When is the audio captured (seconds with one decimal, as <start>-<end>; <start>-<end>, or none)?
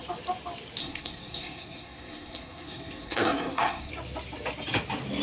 0.0-0.8; 3.9-5.2